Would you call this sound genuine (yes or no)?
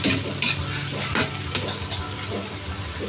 yes